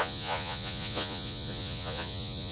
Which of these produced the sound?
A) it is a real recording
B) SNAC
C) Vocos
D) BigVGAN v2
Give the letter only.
C